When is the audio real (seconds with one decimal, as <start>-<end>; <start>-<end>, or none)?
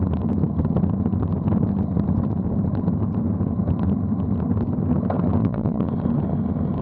0.0-5.4; 5.9-6.8